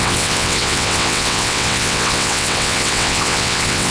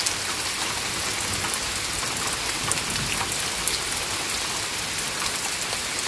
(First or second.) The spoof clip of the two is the first